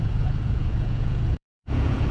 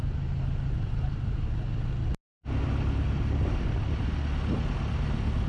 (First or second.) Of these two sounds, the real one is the second